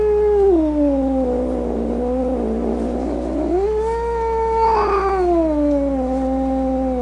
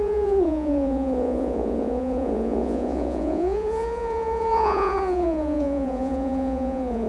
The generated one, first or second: second